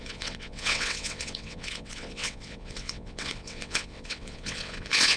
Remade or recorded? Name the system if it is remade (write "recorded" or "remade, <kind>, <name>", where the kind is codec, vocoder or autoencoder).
remade, vocoder, WaveNeXt